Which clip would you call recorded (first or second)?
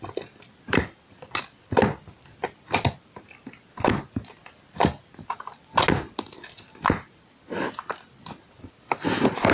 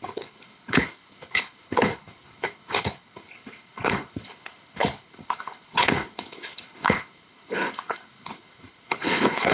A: first